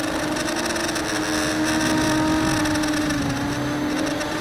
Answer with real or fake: real